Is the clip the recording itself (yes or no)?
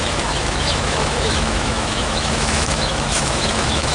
no